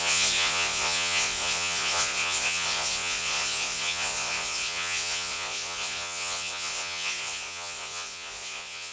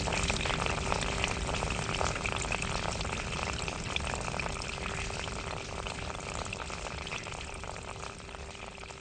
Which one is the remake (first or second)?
first